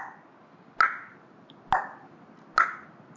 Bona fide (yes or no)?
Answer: yes